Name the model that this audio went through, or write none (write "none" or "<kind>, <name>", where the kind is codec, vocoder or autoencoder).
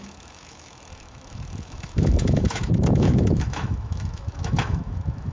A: autoencoder, DAC-VAE